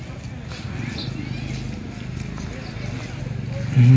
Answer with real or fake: real